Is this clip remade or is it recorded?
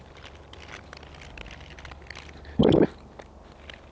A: recorded